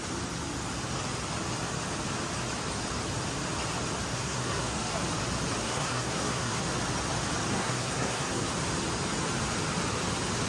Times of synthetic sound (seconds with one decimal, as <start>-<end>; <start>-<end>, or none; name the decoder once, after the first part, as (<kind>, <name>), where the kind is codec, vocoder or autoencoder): 4.1-4.9 (codec, SNAC); 5.6-6.6; 7.5-8.5